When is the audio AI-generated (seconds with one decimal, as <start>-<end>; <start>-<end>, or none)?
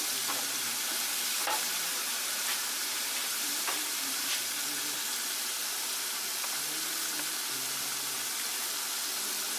1.4-4.4